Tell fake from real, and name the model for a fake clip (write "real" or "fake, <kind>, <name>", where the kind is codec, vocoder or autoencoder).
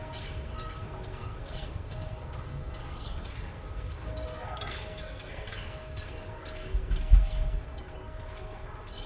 fake, codec, SNAC